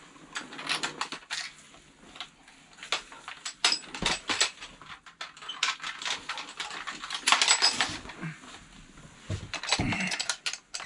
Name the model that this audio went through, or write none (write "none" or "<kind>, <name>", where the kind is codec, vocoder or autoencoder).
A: none